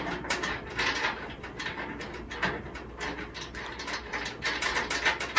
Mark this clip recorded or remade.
recorded